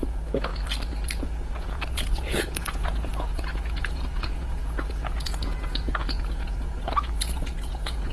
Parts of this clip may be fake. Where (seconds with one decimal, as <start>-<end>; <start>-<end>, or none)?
0.0-0.5; 1.2-8.1